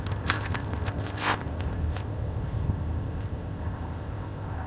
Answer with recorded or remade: remade